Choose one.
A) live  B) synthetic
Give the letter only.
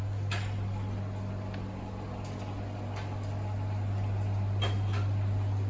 A